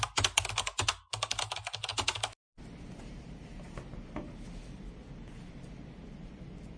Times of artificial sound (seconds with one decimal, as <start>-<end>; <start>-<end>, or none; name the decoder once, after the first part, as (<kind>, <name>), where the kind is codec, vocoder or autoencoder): none

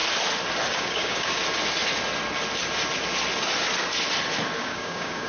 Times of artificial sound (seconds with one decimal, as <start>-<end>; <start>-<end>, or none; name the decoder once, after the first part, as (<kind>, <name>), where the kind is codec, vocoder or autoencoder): 0.7-1.4 (codec, DAC); 4.6-5.3